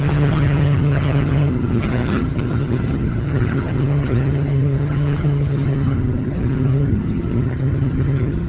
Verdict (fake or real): fake